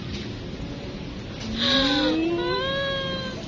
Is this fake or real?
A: real